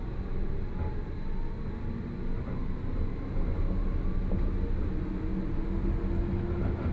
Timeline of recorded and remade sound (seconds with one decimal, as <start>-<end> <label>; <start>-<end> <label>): 0.0-6.9 recorded